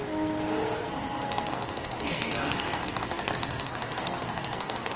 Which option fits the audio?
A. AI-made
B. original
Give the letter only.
A